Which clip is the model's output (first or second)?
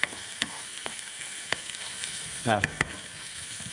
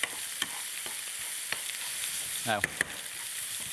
first